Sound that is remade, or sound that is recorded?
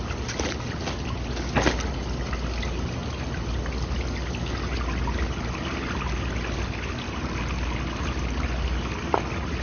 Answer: recorded